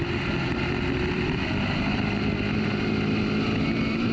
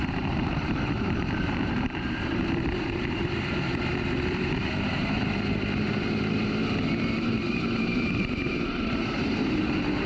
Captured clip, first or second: first